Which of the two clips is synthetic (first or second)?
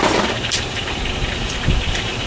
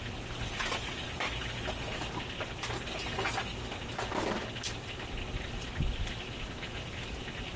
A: first